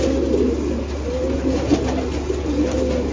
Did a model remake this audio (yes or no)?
no